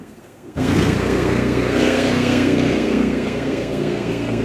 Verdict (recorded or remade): remade